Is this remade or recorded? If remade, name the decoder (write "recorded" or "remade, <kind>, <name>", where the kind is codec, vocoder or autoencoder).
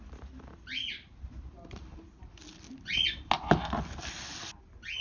recorded